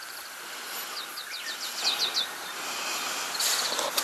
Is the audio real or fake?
real